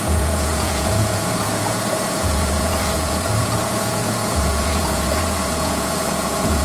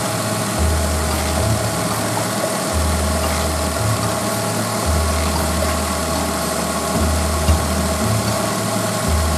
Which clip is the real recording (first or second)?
second